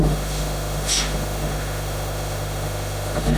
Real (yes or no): no